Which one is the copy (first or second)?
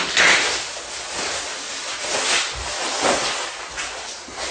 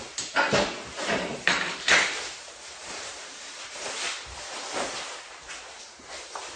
second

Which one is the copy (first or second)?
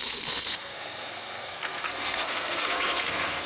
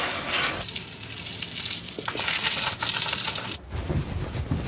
first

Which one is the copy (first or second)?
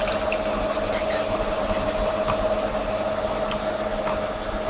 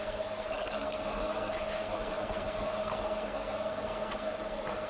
second